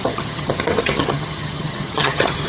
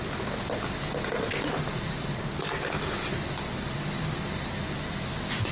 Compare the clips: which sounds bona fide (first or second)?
second